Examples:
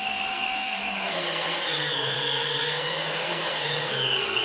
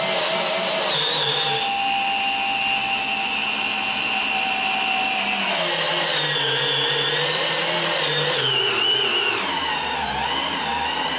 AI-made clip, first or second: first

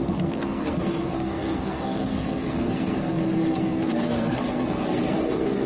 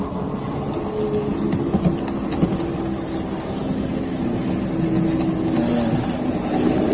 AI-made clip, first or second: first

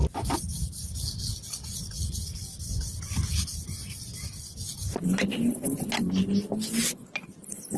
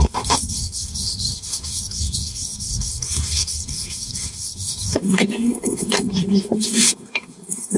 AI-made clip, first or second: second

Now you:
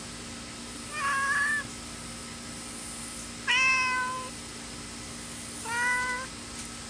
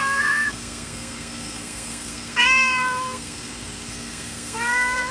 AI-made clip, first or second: second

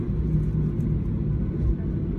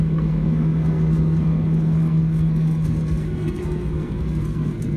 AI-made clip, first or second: second